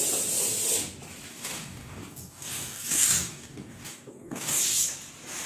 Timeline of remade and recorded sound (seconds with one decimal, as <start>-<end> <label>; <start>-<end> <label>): 0.0-1.3 recorded; 1.3-4.6 remade; 4.6-5.5 recorded